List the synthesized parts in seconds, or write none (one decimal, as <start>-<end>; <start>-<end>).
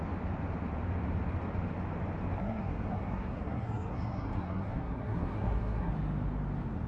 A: 2.4-5.9